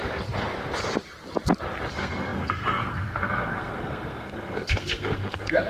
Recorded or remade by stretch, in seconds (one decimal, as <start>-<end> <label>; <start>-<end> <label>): 0.0-1.9 recorded; 1.9-5.7 remade